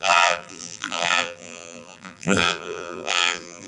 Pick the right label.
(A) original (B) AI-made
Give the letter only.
B